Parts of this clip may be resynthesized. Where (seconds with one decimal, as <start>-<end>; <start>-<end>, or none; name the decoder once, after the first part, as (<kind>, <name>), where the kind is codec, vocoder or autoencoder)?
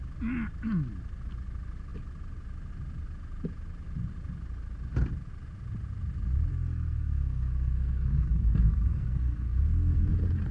6.5-10.1 (codec, SNAC)